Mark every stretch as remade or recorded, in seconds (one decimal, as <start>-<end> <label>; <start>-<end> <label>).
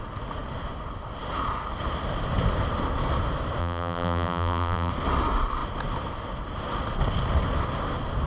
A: 0.0-3.6 recorded; 3.6-4.9 remade; 4.9-8.3 recorded